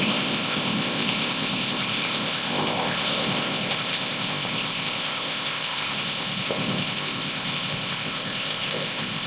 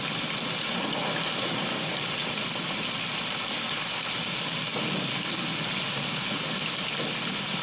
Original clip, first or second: second